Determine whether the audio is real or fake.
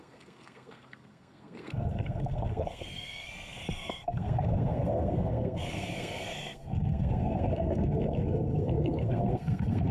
fake